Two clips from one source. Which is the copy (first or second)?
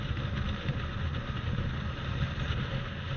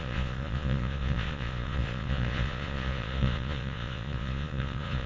second